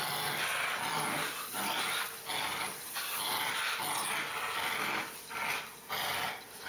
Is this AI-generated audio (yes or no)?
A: no